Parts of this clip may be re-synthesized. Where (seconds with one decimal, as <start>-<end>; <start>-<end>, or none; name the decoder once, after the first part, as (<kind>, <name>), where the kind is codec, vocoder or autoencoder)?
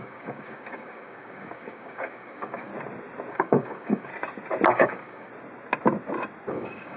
0.0-2.7 (codec, DAC); 3.3-4.1; 4.7-5.3; 6.5-7.0